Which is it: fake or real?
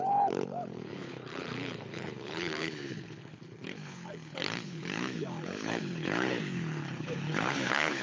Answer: fake